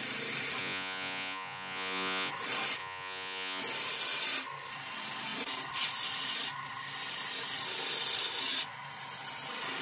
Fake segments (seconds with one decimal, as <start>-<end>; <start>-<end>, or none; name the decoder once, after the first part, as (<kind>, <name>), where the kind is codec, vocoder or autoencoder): 0.6-2.3 (vocoder, Vocos); 2.8-3.6